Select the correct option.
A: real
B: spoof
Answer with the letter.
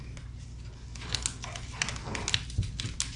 A